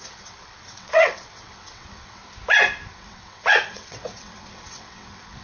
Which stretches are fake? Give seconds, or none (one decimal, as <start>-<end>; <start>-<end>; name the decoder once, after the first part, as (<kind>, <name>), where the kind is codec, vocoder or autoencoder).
0.0-2.2 (vocoder, WaveNeXt); 2.9-5.4